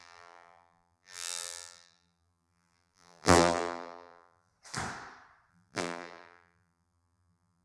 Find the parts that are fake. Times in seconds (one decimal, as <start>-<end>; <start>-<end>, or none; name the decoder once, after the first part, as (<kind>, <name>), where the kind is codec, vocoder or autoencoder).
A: 0.0-4.5 (vocoder, BigVGAN v2); 5.5-7.6